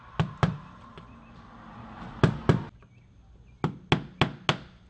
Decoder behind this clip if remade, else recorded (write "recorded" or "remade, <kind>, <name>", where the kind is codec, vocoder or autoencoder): recorded